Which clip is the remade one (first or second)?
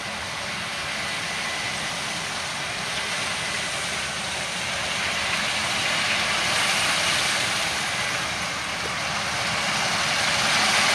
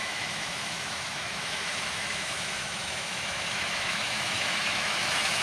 second